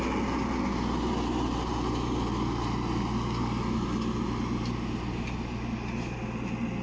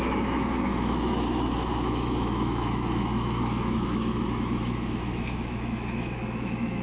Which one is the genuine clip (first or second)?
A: first